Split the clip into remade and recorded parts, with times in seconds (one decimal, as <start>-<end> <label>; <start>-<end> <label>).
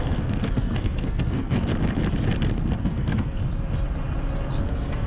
0.0-1.7 remade; 1.7-2.8 recorded; 2.8-3.4 remade; 3.4-4.6 recorded; 4.6-5.1 remade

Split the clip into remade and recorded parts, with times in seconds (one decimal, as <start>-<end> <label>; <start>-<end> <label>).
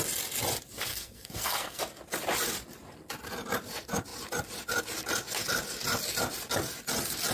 0.0-0.9 recorded; 0.9-1.8 remade; 1.8-7.3 recorded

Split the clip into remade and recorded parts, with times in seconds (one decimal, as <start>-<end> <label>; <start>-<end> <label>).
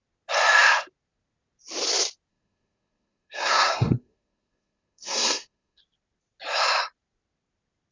0.0-2.3 recorded; 2.3-5.8 remade; 5.8-7.9 recorded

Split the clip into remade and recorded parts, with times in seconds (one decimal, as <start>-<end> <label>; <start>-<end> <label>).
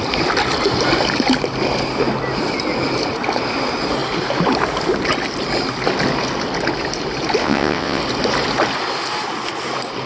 0.0-7.4 recorded; 7.4-8.0 remade; 8.0-10.1 recorded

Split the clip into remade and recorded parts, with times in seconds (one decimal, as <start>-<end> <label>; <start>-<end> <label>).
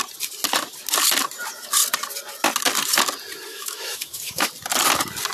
0.0-3.5 recorded; 3.5-4.5 remade; 4.5-5.3 recorded